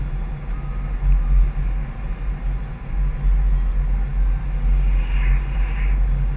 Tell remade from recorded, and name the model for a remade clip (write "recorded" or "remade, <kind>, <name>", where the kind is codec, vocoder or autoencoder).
recorded